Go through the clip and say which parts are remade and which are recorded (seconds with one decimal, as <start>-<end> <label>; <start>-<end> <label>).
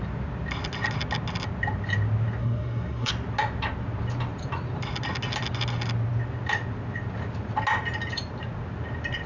0.0-2.4 recorded; 2.4-3.1 remade; 3.1-9.3 recorded